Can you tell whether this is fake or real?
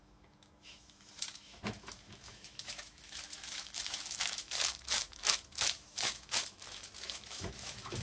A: fake